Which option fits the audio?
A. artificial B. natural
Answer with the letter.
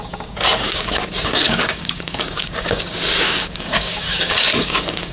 A